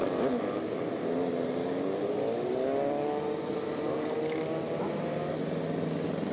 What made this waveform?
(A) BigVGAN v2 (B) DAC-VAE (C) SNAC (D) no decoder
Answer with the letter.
D